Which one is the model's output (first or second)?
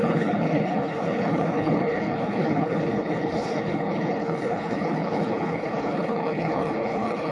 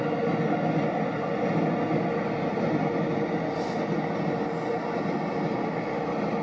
first